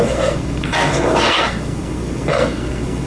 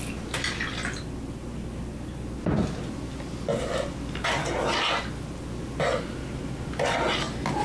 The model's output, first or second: first